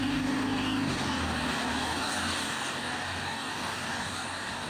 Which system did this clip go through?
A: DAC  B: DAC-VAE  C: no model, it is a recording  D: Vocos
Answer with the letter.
A